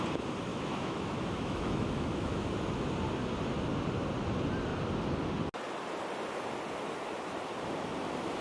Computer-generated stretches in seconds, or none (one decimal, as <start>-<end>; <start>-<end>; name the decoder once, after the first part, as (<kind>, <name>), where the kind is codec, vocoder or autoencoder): 0.5-2.5 (autoencoder, DAC-VAE)